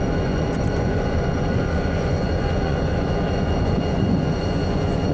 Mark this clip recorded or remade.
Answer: remade